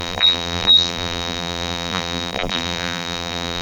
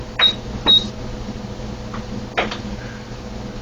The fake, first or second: first